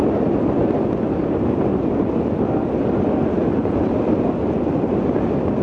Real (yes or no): yes